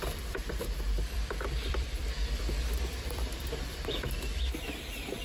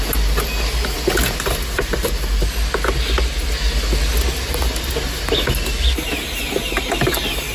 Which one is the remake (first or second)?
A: first